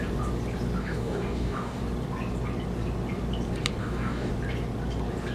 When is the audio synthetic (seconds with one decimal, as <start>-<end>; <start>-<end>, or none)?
0.8-1.8; 3.8-4.3